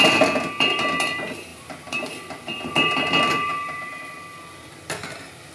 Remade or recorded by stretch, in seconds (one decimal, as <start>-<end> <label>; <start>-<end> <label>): 0.0-5.5 remade